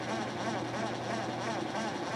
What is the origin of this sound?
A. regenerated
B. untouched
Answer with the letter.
B